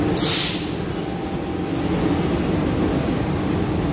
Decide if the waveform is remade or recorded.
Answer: recorded